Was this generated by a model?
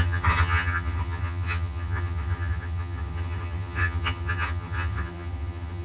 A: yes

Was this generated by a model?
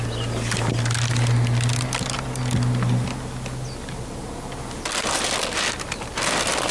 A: no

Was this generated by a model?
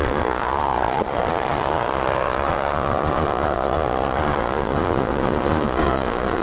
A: yes